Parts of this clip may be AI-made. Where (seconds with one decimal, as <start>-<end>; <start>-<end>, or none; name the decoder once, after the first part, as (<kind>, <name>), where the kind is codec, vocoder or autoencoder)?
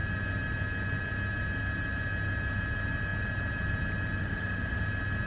4.2-4.8 (autoencoder, DAC-VAE)